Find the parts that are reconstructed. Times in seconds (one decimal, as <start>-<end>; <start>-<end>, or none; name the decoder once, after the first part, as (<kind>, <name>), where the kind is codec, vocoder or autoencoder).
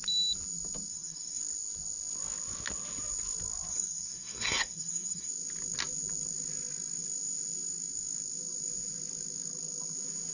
0.9-1.4 (codec, SNAC); 3.7-5.3